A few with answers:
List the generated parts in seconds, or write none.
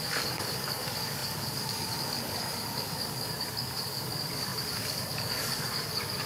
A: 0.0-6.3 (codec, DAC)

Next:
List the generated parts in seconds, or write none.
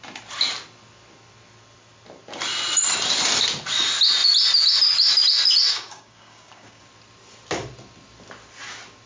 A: 5.7-6.8 (codec, DAC)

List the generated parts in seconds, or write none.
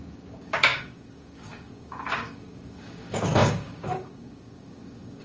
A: 0.0-5.2 (codec, DAC)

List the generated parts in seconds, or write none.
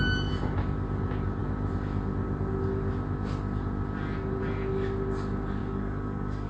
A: 5.6-6.5 (codec, DAC)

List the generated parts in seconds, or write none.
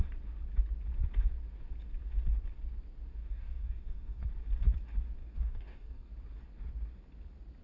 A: 3.2-4.2 (codec, DAC); 5.2-6.1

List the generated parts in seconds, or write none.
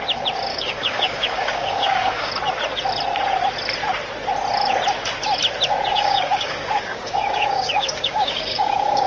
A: 0.5-2.3 (codec, DAC); 5.9-9.1